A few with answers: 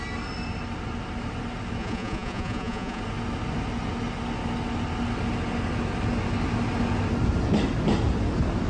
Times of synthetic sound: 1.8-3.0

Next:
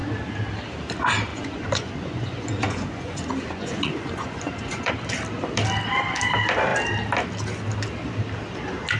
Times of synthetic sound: 1.3-4.9